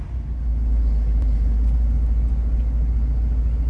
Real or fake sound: real